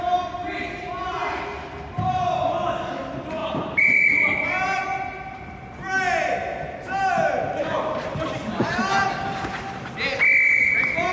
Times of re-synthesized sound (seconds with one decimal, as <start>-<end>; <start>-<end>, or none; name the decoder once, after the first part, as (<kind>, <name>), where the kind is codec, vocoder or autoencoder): none